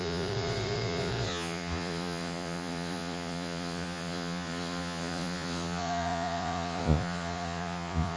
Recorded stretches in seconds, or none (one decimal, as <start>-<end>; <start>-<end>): none